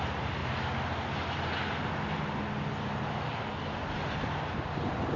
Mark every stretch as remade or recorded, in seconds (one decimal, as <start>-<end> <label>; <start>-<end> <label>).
0.0-5.2 recorded